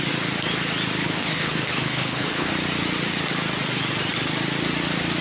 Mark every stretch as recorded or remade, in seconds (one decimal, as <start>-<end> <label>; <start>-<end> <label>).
0.0-1.0 recorded; 1.0-2.5 remade; 2.5-5.2 recorded